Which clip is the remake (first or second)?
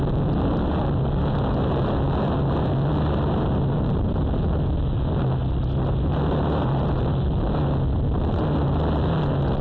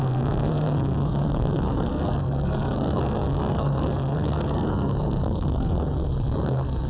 second